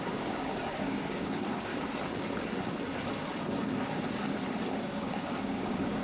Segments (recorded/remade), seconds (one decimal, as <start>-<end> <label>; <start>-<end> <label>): 0.0-1.7 remade; 1.7-4.8 recorded; 4.8-6.0 remade